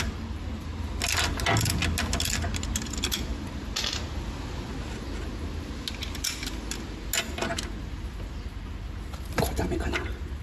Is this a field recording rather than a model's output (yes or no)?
yes